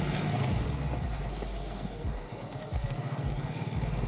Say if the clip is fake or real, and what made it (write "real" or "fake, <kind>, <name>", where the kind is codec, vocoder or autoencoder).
fake, codec, SNAC